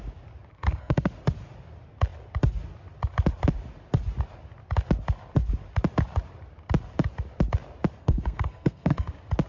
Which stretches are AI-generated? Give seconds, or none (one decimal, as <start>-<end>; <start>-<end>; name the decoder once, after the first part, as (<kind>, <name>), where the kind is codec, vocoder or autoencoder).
0.5-1.1 (codec, SNAC); 8.0-9.1